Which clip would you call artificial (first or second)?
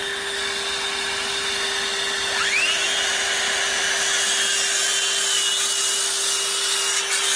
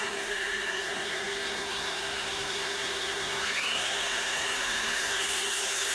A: second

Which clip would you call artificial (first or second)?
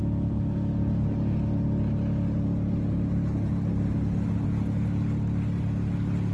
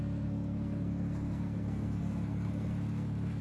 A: second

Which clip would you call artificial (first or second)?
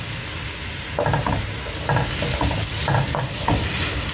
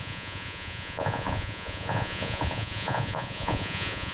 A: second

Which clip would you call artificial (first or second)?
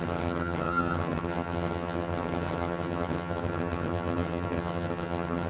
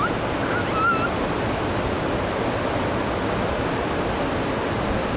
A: first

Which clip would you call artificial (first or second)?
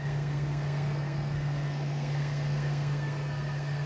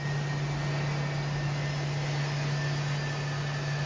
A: first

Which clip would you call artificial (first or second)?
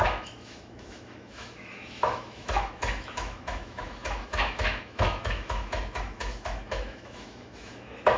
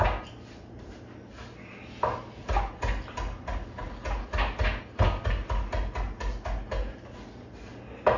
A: first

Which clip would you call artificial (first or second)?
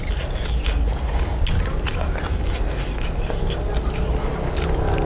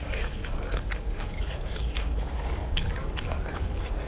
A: second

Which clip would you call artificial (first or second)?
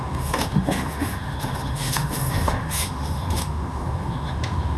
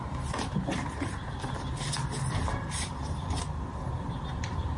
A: first